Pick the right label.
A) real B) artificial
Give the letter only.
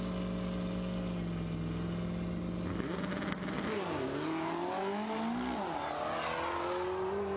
A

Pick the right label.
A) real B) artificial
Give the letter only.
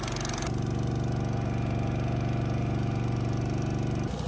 A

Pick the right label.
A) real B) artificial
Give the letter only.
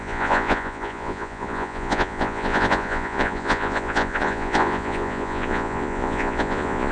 B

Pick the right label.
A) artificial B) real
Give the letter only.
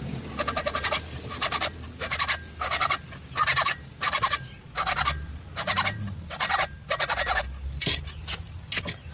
B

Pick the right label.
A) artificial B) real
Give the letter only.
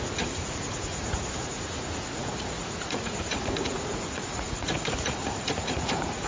A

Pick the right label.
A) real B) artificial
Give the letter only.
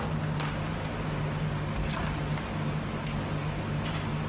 A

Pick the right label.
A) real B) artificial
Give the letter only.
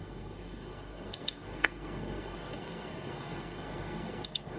B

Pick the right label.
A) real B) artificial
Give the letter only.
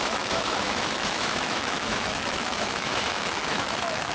B